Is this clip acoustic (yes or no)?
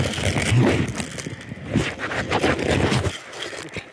yes